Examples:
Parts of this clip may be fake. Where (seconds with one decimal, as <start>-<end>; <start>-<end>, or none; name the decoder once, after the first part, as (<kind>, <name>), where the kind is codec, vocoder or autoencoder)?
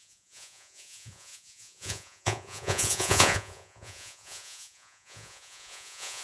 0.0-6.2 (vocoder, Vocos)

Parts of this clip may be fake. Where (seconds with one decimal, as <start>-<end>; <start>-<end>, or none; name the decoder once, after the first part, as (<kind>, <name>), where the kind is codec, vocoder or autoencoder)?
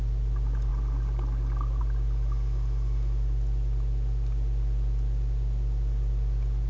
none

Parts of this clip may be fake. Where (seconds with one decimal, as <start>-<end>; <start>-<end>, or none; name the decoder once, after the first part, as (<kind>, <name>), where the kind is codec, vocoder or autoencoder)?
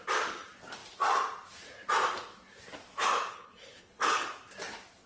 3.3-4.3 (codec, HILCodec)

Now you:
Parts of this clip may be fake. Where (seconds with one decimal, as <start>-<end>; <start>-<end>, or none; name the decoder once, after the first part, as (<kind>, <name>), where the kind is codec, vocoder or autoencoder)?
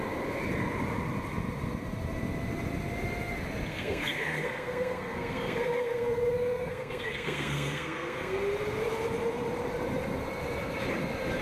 3.7-8.4 (codec, SNAC)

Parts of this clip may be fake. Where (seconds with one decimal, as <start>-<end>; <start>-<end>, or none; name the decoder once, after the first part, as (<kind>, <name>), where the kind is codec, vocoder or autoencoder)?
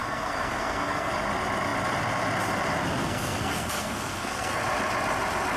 0.0-1.1 (codec, SNAC); 3.0-4.6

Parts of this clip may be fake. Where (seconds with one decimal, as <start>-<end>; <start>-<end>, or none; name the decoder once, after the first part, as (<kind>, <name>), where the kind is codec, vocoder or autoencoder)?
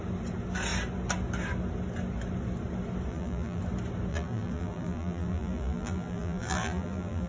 3.1-3.6 (vocoder, BigVGAN v2); 4.1-7.3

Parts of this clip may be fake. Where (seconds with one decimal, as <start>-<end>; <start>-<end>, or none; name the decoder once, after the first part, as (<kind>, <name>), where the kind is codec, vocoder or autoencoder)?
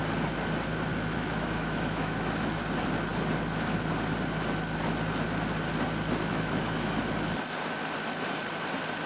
0.9-2.6 (autoencoder, DAC-VAE); 6.3-7.0